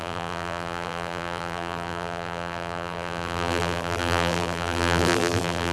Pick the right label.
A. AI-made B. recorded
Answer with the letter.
A